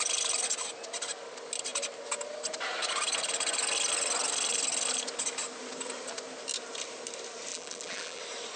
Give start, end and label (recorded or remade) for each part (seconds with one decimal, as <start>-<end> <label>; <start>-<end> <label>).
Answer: 0.0-7.5 recorded; 7.5-8.2 remade; 8.2-8.6 recorded